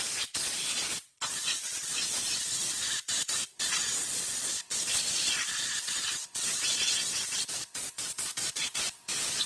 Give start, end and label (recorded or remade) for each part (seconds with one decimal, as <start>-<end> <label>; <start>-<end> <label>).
0.0-9.5 remade